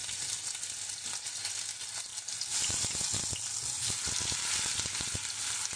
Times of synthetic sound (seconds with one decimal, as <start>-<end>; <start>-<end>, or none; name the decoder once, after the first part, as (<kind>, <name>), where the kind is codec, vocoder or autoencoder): none